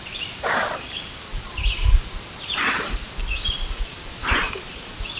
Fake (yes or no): no